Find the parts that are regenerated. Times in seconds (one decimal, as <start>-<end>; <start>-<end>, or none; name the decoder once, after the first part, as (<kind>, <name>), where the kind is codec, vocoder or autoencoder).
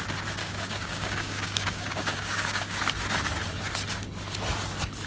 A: 0.4-2.8 (codec, DAC)